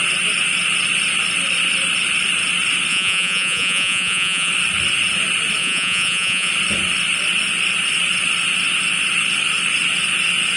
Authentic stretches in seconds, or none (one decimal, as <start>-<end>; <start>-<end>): 0.0-2.9; 4.5-5.6; 6.5-10.6